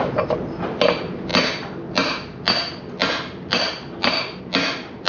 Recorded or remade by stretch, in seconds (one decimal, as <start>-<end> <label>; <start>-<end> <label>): 0.0-5.1 recorded